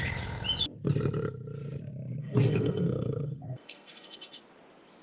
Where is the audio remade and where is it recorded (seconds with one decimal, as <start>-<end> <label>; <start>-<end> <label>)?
0.0-2.2 recorded; 2.2-4.4 remade; 4.4-5.0 recorded